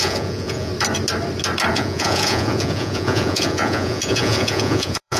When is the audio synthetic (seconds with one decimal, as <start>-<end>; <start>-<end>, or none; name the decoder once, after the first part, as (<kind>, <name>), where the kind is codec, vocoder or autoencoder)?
0.0-0.7 (vocoder, Vocos); 1.7-5.2